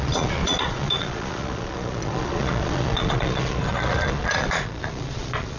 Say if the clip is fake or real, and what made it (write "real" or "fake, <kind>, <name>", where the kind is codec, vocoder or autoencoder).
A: fake, vocoder, Vocos